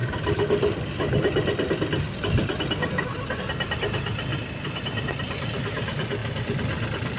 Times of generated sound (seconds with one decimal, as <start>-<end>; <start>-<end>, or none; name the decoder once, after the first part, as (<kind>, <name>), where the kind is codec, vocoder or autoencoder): 0.0-3.4 (vocoder, BigVGAN v2); 6.2-7.2